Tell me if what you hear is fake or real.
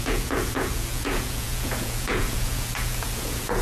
fake